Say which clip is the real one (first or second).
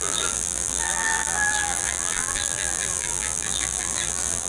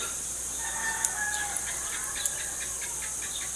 second